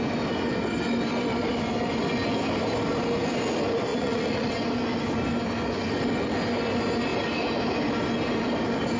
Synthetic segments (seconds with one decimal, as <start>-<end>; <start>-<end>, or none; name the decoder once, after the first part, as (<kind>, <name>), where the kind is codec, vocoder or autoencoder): 3.9-4.5 (vocoder, Vocos)